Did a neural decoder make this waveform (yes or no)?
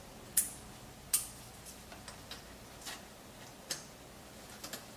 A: no